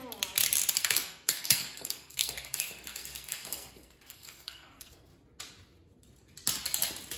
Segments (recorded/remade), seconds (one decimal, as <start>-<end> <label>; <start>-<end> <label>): 0.0-0.8 recorded; 0.8-5.1 remade; 5.1-7.2 recorded